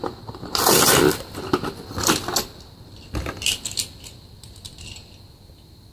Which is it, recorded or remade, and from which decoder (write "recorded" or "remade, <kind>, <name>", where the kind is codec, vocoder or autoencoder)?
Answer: recorded